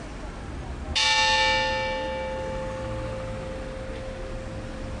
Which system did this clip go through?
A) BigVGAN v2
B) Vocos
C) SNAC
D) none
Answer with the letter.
D